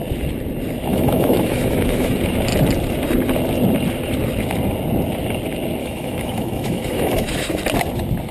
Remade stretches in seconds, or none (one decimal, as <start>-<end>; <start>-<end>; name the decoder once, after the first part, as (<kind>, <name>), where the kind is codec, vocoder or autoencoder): 0.9-2.1 (autoencoder, DAC-VAE); 5.8-7.6